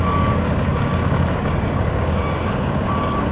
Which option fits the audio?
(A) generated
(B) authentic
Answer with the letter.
A